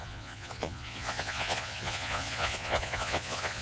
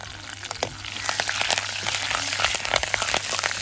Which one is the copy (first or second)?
first